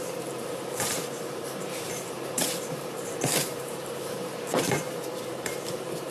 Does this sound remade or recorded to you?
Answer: remade